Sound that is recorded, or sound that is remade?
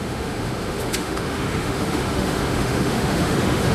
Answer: remade